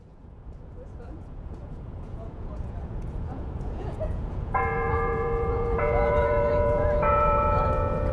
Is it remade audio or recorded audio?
remade